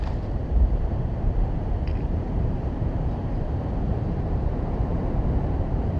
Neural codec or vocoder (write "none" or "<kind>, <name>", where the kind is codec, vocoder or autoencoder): vocoder, BigVGAN v2